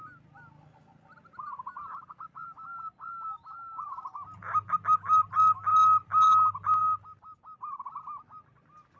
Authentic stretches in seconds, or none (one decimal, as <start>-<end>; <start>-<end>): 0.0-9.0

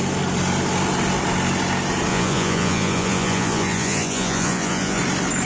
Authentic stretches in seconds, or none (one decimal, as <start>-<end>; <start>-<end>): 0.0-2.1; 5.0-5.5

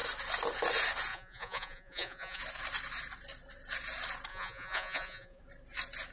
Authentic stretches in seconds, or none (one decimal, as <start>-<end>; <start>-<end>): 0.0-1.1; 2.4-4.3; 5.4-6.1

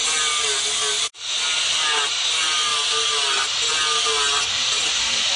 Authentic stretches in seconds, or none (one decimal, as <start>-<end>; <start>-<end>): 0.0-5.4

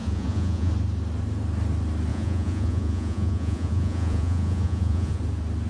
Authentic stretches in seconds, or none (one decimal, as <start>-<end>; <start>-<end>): 0.7-2.1; 5.2-5.7